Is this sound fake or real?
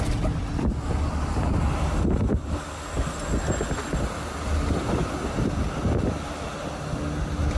real